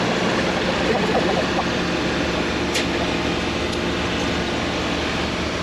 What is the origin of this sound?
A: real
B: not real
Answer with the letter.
A